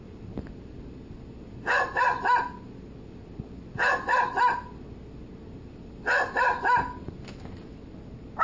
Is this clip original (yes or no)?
yes